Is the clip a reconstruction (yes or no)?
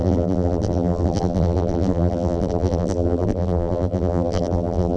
yes